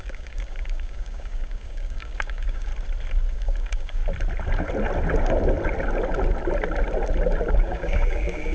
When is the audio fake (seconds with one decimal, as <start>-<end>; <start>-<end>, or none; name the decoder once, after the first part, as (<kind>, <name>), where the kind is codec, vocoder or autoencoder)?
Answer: 0.0-2.7 (codec, DAC); 3.3-4.0; 7.5-8.5